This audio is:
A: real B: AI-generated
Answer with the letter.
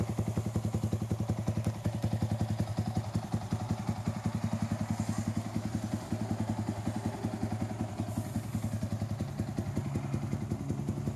A